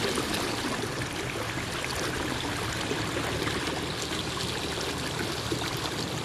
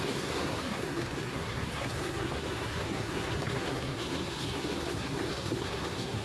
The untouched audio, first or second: first